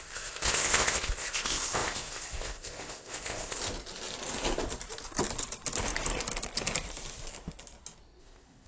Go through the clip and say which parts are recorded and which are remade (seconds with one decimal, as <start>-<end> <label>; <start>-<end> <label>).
0.0-3.6 remade; 3.6-8.2 recorded; 8.2-8.7 remade